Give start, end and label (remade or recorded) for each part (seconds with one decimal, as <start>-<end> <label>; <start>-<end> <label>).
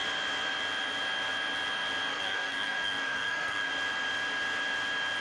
0.0-2.1 recorded; 2.1-3.7 remade; 3.7-5.2 recorded